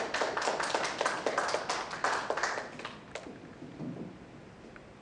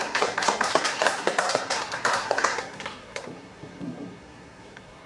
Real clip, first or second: first